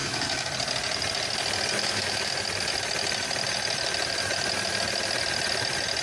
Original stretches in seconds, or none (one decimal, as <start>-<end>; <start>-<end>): 0.5-1.8; 2.3-6.0